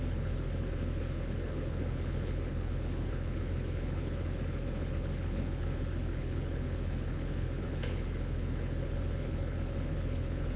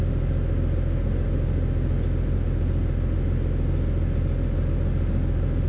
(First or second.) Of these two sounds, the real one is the second